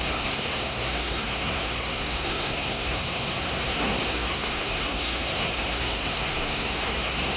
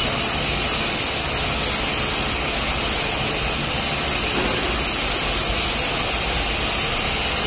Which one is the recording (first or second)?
second